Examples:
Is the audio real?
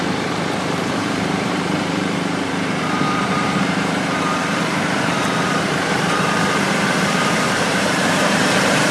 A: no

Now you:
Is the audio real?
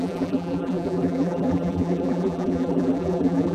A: no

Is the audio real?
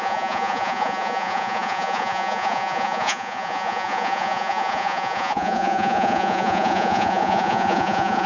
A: no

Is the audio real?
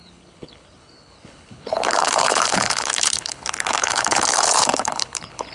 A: no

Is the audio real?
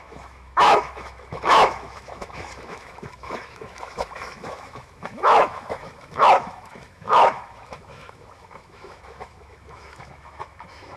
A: no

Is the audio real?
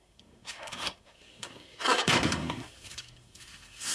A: no